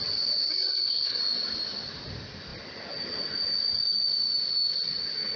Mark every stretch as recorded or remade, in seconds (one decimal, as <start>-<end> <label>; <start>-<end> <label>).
0.0-0.5 recorded; 0.5-1.2 remade; 1.2-5.4 recorded